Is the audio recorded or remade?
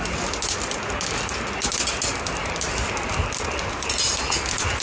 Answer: recorded